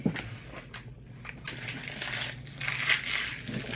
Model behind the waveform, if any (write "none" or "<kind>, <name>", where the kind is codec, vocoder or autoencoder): none